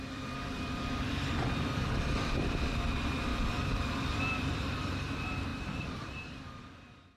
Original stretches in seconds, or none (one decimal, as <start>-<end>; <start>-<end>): none